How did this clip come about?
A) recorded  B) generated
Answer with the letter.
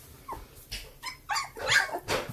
A